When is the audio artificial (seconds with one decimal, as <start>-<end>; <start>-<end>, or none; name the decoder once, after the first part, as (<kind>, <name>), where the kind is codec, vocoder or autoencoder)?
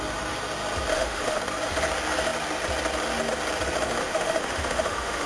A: 0.9-1.4 (autoencoder, DAC-VAE); 4.0-5.3